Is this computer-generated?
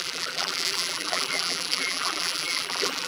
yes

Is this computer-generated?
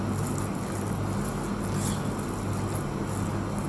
no